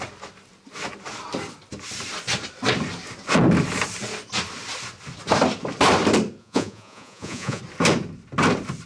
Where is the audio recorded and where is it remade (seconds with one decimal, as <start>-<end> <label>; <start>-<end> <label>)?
0.0-6.4 recorded; 6.4-7.6 remade; 7.6-8.9 recorded